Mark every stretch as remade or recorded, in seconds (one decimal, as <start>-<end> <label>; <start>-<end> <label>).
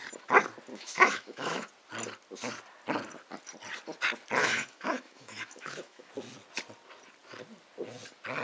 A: 0.0-0.7 recorded; 0.7-1.7 remade; 1.7-4.4 recorded; 4.4-6.1 remade; 6.1-8.4 recorded